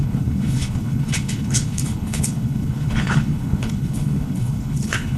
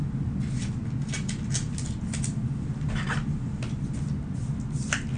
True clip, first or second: second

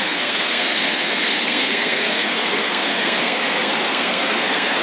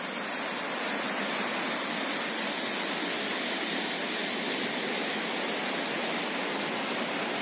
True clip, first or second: second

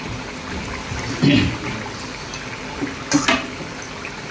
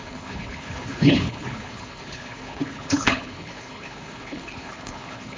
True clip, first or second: first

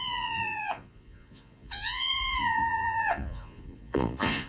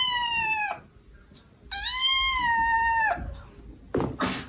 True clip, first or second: second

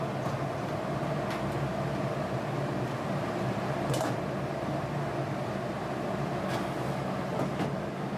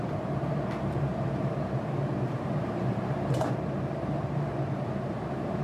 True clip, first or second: first